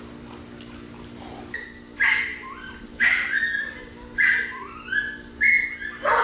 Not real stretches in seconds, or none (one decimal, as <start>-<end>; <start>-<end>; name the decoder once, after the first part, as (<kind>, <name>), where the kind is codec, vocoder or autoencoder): none